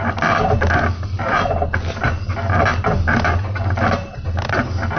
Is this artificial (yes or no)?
no